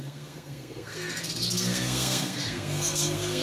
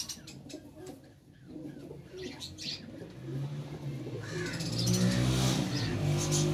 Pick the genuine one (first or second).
second